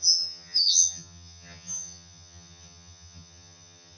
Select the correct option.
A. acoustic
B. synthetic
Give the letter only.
B